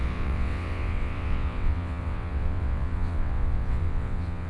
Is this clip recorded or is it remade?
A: remade